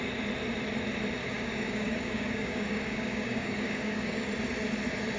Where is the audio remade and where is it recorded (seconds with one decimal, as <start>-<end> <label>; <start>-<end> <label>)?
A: 0.0-1.2 recorded; 1.2-4.3 remade; 4.3-5.2 recorded

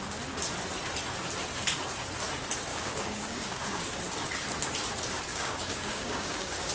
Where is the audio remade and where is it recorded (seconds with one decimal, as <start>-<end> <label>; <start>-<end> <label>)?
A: 0.0-2.7 recorded; 2.7-3.8 remade; 3.8-5.3 recorded; 5.3-6.7 remade

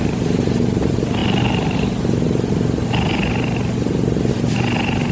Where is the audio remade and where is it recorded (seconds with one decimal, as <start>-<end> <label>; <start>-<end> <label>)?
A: 0.0-5.1 recorded